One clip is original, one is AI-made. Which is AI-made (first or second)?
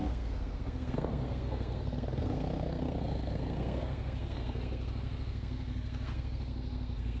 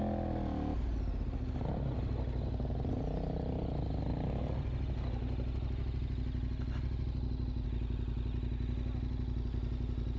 first